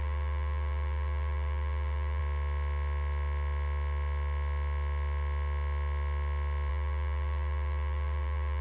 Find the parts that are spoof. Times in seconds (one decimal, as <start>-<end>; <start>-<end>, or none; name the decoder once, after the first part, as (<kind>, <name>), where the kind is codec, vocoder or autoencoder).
0.0-2.2 (vocoder, BigVGAN v2); 6.7-8.6